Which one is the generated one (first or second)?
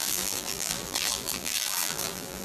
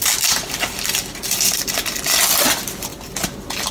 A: first